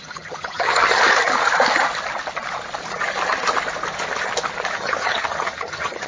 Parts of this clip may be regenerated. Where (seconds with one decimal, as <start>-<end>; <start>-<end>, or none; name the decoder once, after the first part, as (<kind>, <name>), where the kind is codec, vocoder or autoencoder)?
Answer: 0.0-1.0 (vocoder, HiFi-GAN); 4.7-6.1